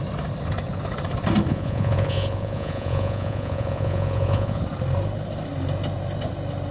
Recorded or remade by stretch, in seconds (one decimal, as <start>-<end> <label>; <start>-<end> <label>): 0.0-1.5 recorded; 1.5-4.6 remade; 4.6-6.7 recorded